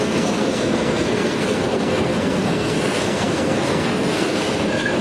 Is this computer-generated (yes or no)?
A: yes